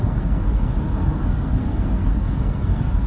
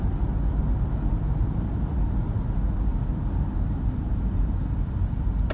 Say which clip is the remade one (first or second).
first